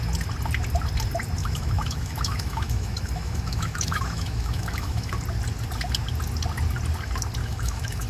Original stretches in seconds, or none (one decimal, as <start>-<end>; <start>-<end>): 0.0-1.4; 5.1-7.4